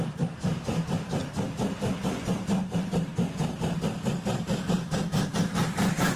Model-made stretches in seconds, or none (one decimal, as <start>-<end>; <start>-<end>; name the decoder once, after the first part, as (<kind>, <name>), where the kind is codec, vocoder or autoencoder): 0.0-1.2 (vocoder, BigVGAN v2); 2.2-3.1; 4.1-6.2